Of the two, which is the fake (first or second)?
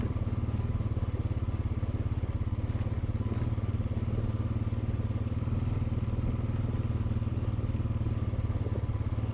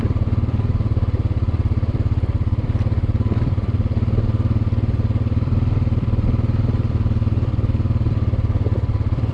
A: second